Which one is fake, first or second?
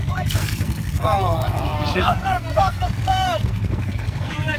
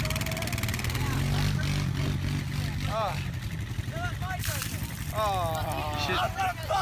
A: first